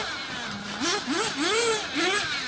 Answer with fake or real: real